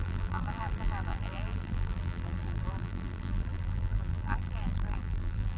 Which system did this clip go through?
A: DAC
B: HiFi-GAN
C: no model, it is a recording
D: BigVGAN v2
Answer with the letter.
D